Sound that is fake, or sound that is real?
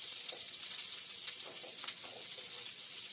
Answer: fake